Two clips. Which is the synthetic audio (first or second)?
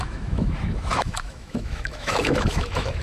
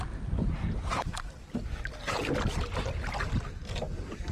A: first